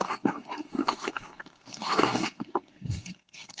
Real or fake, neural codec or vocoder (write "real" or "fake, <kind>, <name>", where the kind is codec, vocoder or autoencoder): fake, codec, SNAC